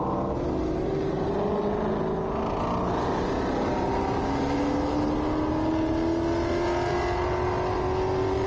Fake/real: real